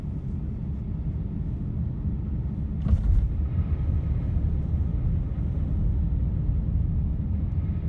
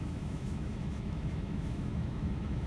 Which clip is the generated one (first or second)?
second